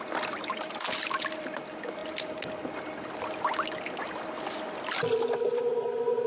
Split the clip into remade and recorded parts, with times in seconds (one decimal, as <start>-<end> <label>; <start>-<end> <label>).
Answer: 0.0-6.3 recorded